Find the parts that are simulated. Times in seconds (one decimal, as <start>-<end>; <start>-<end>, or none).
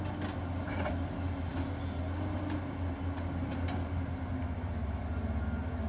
none